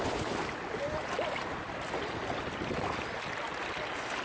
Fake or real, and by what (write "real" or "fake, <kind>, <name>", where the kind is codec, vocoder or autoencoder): real